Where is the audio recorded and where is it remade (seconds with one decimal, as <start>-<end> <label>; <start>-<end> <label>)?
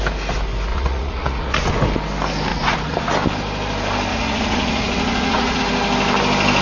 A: 0.0-0.7 recorded; 0.7-1.7 remade; 1.7-2.5 recorded; 2.5-3.1 remade; 3.1-4.1 recorded; 4.1-5.6 remade; 5.6-6.6 recorded